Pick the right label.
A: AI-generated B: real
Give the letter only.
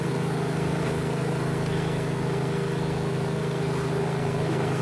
A